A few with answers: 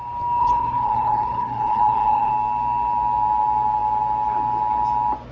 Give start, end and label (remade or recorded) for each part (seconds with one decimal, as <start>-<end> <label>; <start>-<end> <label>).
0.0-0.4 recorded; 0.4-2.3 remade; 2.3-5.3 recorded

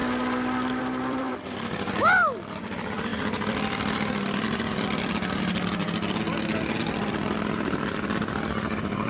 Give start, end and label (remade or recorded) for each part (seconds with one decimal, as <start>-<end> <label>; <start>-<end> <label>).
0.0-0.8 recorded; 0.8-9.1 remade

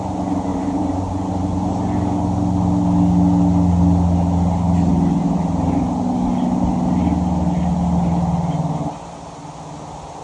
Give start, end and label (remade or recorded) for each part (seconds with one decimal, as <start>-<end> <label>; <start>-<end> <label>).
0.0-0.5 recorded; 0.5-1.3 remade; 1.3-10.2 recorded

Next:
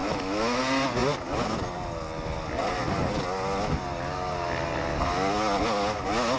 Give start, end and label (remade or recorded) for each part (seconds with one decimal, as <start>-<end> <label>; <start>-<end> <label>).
0.0-0.6 remade; 0.6-6.4 recorded

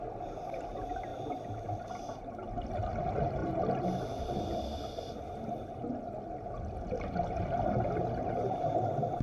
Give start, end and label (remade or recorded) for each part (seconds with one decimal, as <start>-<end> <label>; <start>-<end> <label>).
0.0-9.2 recorded

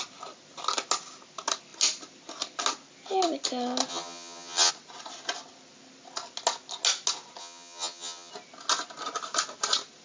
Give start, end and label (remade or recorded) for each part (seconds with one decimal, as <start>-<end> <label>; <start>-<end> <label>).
0.0-3.9 recorded; 3.9-4.7 remade; 4.7-7.4 recorded; 7.4-8.3 remade; 8.3-10.0 recorded

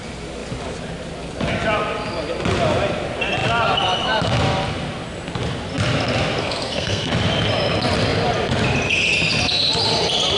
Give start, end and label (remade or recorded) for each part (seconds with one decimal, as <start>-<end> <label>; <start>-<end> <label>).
0.0-6.4 recorded; 6.4-7.1 remade; 7.1-10.4 recorded

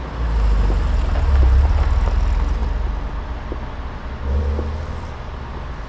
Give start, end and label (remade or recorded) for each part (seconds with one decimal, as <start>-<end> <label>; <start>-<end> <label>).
0.0-5.9 recorded